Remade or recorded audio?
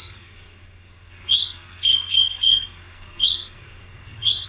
remade